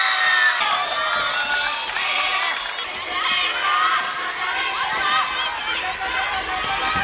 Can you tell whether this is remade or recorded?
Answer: recorded